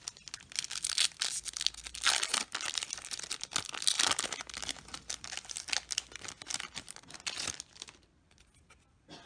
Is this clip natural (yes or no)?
yes